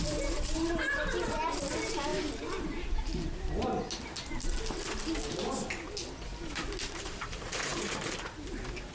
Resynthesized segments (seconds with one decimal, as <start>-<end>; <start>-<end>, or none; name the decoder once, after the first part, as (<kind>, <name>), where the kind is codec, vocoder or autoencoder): 0.0-2.1 (vocoder, BigVGAN v2); 6.9-8.9